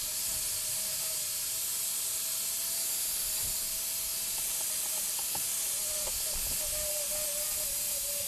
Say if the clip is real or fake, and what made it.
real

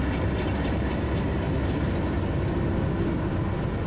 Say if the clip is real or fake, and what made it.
real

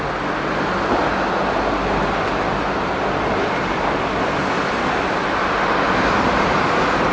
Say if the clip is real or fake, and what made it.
real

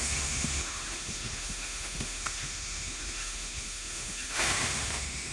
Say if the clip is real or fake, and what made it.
fake, autoencoder, DAC-VAE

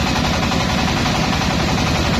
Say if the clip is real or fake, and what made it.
real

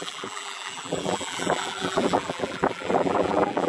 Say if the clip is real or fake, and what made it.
fake, vocoder, BigVGAN v2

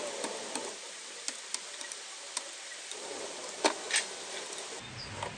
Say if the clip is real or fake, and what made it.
real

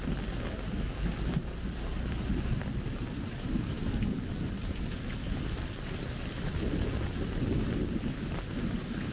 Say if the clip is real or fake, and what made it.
real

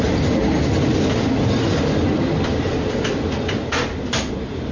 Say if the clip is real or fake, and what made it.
real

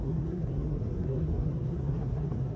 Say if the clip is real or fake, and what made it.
fake, codec, SNAC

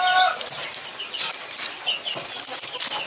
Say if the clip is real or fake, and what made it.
real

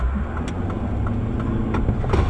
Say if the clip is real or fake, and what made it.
real